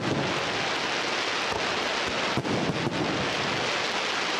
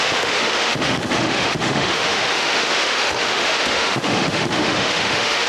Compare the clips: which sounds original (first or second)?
first